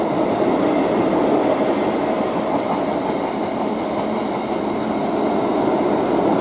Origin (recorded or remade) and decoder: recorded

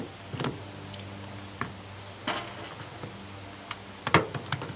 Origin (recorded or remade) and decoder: recorded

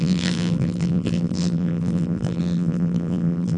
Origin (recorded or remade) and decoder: remade, vocoder, BigVGAN v2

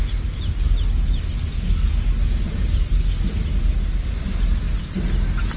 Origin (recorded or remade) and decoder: recorded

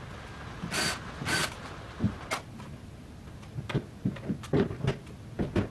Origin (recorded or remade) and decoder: recorded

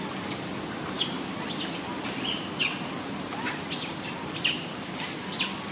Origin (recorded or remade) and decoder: recorded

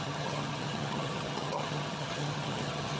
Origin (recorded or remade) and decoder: remade, vocoder, HiFi-GAN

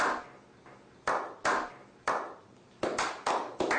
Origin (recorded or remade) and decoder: recorded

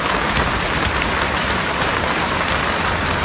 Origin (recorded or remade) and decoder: recorded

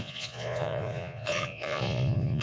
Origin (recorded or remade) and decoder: remade, vocoder, Vocos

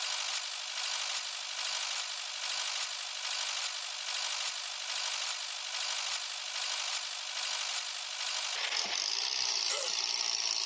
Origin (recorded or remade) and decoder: recorded